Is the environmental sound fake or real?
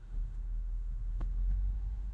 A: fake